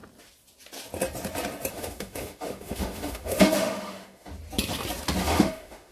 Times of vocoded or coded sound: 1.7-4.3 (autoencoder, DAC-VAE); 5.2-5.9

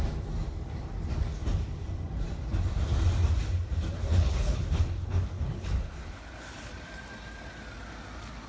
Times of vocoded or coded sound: 4.0-6.7 (codec, HILCodec)

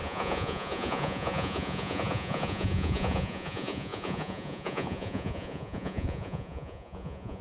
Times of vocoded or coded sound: 0.0-7.4 (vocoder, Vocos)

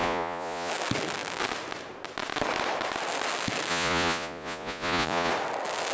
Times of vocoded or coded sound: 0.0-0.7 (vocoder, Vocos); 3.7-5.3

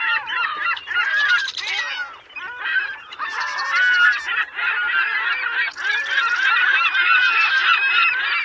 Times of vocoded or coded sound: 0.0-3.6 (vocoder, BigVGAN v2); 6.2-8.4

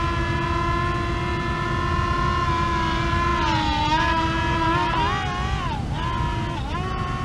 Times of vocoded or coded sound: 3.3-3.8 (vocoder, BigVGAN v2)

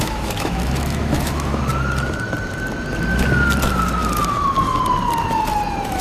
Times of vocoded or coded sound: 0.0-1.6 (autoencoder, DAC-VAE)

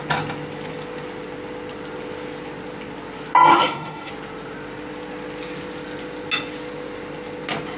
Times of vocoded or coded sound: 3.5-4.1 (autoencoder, DAC-VAE)